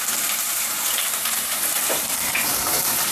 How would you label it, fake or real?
fake